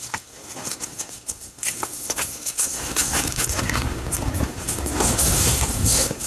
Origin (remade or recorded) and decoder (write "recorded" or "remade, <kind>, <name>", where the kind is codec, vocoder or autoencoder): remade, codec, SNAC